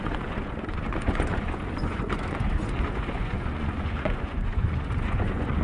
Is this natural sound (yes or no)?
no